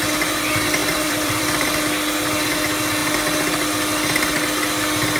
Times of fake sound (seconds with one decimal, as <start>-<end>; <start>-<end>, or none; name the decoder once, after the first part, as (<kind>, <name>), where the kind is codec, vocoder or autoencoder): 0.8-1.8 (vocoder, BigVGAN v2)